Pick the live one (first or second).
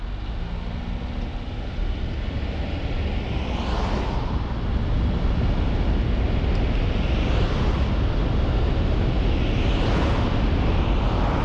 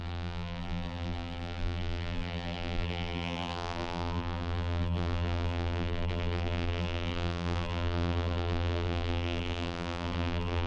first